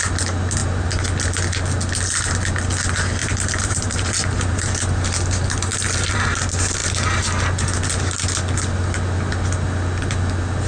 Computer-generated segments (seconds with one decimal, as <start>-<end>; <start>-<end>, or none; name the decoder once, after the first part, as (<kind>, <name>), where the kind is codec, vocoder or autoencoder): 3.2-4.7 (vocoder, BigVGAN v2); 5.7-6.3